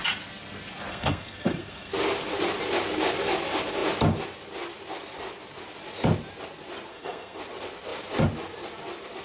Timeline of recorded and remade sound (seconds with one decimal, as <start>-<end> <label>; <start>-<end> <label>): 0.0-0.9 recorded; 0.9-1.9 remade; 1.9-6.9 recorded; 6.9-7.4 remade; 7.4-9.2 recorded